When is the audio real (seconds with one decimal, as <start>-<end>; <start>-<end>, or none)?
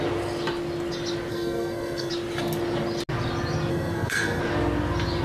0.0-1.3; 2.1-3.7; 4.4-5.2